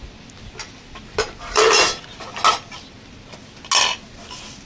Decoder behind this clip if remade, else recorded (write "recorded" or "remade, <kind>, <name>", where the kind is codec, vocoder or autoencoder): recorded